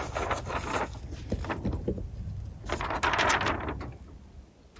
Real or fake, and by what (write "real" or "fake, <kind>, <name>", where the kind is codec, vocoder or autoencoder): real